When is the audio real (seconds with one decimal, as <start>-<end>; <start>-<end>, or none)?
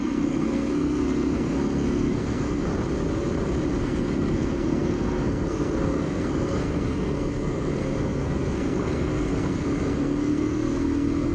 2.7-3.8